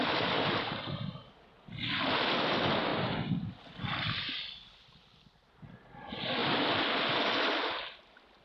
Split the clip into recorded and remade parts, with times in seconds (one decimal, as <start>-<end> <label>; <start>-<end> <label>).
0.0-8.4 recorded